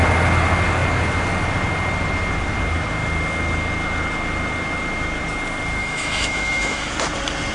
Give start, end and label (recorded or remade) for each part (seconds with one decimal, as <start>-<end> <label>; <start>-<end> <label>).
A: 0.0-5.8 recorded; 5.8-6.9 remade; 6.9-7.5 recorded